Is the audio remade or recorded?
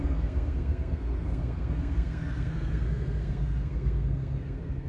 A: remade